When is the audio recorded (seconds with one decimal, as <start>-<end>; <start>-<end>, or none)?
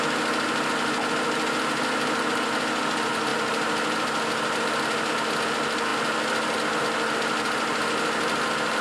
0.0-8.8